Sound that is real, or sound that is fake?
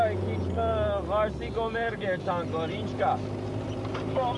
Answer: real